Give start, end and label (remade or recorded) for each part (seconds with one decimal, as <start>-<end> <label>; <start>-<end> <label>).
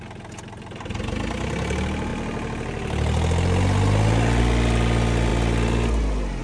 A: 0.0-6.4 recorded